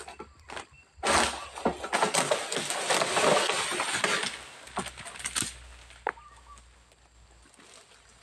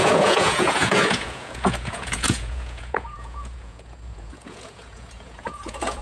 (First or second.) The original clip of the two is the first